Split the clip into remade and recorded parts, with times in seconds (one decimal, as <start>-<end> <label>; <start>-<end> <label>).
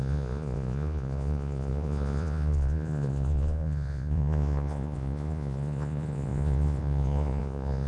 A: 0.0-7.9 remade